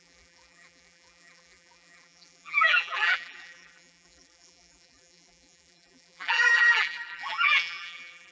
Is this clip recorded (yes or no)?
no